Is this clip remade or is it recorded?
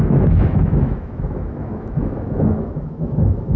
remade